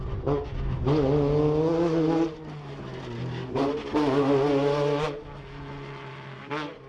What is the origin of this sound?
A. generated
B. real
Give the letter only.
B